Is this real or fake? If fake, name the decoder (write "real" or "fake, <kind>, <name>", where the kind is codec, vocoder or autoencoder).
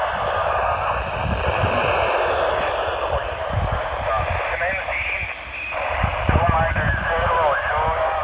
real